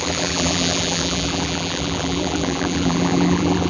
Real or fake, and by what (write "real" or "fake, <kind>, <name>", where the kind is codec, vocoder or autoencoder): fake, vocoder, BigVGAN v2